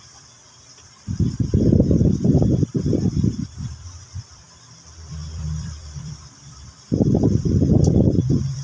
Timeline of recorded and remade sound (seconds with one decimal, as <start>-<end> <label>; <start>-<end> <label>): 0.0-8.6 remade